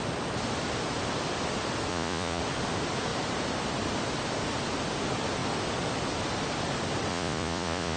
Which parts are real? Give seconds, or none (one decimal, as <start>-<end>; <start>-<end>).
0.0-1.9; 2.4-7.1